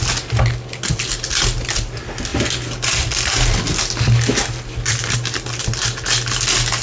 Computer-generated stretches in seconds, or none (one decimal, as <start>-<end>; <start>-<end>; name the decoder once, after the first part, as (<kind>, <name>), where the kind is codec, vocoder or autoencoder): none